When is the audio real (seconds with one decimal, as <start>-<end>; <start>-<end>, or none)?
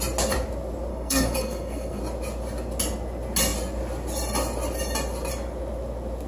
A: 0.0-0.9; 2.0-6.3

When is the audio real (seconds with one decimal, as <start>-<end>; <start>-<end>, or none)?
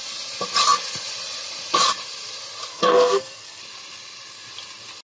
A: 0.0-2.7; 3.6-5.2